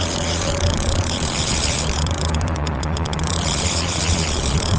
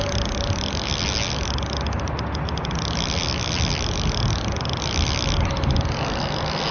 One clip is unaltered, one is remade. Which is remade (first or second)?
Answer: first